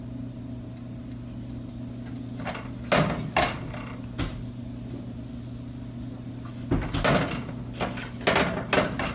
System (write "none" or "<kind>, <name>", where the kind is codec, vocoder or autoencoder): none